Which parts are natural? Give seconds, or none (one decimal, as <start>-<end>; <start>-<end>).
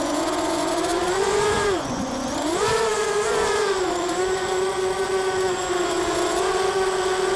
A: none